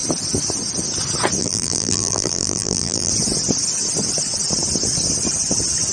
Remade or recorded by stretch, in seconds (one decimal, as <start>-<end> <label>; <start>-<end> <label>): 0.0-1.4 recorded; 1.4-3.1 remade; 3.1-5.9 recorded